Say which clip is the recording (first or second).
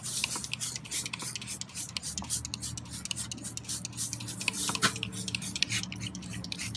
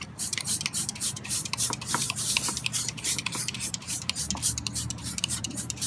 first